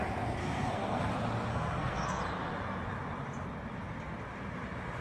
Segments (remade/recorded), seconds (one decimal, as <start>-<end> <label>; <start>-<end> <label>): 0.0-0.4 recorded; 0.4-1.1 remade; 1.1-1.5 recorded; 1.5-2.2 remade; 2.2-5.0 recorded